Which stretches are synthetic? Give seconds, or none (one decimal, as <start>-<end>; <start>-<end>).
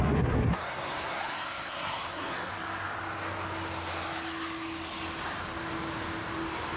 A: 0.0-2.5